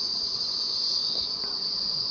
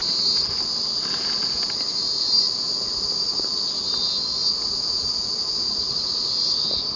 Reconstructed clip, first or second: first